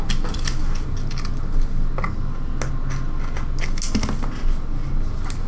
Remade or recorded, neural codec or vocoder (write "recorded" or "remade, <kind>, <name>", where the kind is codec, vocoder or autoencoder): recorded